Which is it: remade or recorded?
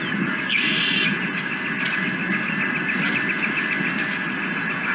recorded